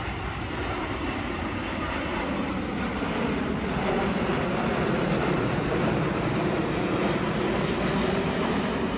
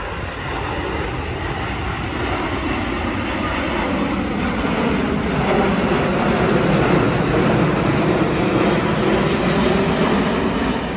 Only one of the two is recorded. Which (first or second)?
second